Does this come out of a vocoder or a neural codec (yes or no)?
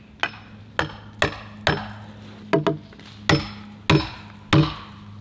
no